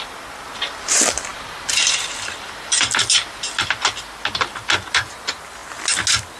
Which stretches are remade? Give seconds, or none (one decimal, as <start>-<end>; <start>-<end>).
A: none